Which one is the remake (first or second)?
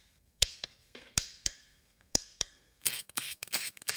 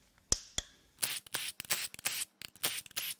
first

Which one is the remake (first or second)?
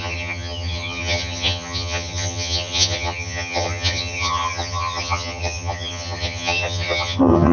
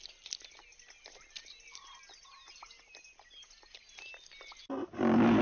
first